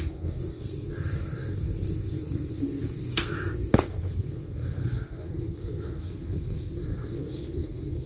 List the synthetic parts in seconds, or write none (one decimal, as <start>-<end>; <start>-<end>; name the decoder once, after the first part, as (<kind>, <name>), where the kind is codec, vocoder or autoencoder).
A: 0.0-8.1 (codec, SNAC)

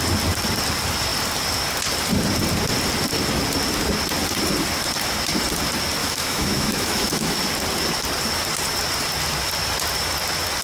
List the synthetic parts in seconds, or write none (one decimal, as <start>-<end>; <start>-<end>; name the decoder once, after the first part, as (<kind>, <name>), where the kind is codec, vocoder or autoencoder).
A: 6.0-7.4 (autoencoder, DAC-VAE)

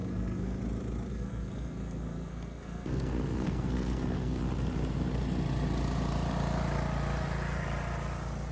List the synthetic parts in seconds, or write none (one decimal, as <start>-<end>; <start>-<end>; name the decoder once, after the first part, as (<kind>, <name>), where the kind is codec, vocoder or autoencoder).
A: 0.0-0.6 (codec, SNAC); 1.1-4.4

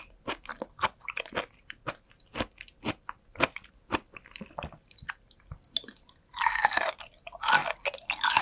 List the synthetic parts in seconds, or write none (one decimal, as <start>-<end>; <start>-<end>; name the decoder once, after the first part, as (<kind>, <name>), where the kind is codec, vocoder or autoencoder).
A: none

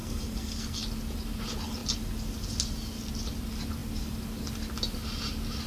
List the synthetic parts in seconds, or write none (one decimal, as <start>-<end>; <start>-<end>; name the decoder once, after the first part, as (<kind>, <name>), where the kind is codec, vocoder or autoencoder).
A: 0.0-0.8 (codec, SNAC)

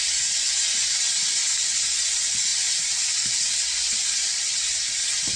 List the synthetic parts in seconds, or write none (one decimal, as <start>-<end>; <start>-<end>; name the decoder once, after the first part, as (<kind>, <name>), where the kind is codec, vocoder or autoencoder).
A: none

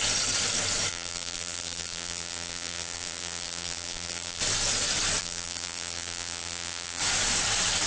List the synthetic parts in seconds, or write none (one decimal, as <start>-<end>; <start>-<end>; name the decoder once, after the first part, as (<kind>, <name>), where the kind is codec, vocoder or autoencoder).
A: 0.9-4.4 (vocoder, BigVGAN v2); 5.2-7.0

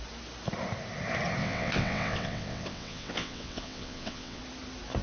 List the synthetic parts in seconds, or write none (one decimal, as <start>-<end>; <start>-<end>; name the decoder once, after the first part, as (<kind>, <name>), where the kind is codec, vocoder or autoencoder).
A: 1.4-4.4 (vocoder, WaveNeXt)